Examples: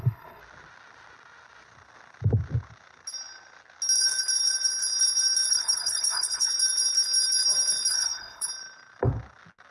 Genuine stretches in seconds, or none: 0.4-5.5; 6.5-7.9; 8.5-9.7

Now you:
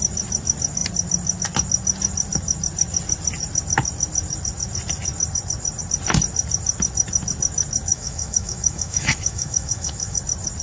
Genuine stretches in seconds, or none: 0.0-7.9; 10.2-10.6

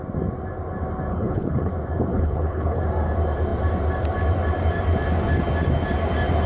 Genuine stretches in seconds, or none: 0.0-1.1; 1.7-2.1; 2.8-6.5

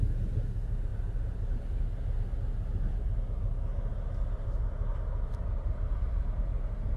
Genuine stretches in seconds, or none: 0.0-0.9; 1.6-3.9

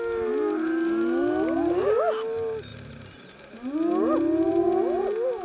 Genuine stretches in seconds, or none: 0.0-5.4

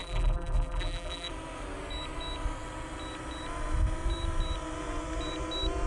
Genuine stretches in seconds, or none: 1.3-5.9

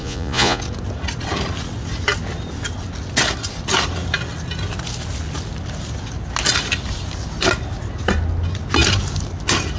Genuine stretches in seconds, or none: 0.6-9.8

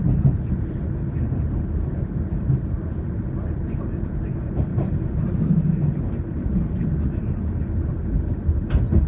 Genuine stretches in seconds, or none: 0.0-4.7; 5.5-9.1